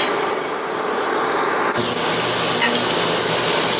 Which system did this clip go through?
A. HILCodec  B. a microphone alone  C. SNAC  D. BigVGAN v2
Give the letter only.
B